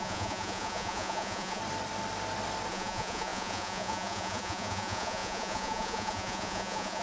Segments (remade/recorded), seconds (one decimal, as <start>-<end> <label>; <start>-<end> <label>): 0.0-1.6 remade; 1.6-2.7 recorded; 2.7-7.0 remade